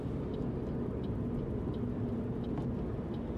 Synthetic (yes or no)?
no